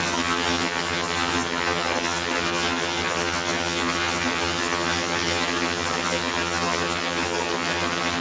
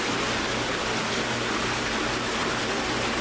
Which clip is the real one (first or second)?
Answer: second